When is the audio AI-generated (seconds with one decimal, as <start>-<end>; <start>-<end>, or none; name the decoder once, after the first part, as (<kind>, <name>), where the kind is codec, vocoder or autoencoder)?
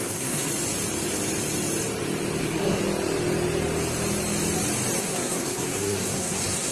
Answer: 0.0-0.5 (codec, SNAC); 2.4-2.8; 5.0-6.7